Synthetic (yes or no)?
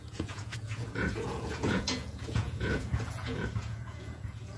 yes